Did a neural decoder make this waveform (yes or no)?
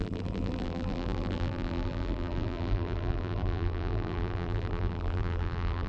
yes